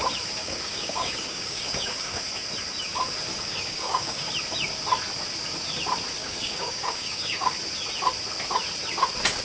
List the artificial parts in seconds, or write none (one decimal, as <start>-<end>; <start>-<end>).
0.4-2.2; 3.3-4.3; 6.2-7.5